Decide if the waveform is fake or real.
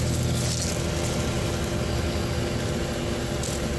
real